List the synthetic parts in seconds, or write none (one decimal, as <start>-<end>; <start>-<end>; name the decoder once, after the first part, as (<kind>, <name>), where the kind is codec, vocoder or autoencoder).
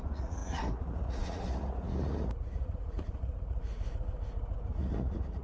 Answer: 0.0-3.7 (vocoder, Vocos); 4.7-5.4